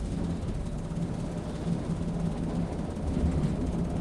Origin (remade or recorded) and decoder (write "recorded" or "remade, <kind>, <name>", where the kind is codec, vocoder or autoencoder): recorded